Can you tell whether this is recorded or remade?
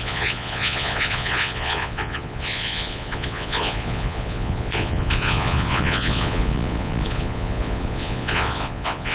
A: remade